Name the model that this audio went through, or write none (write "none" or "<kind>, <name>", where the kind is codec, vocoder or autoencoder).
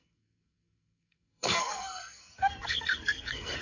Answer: codec, SNAC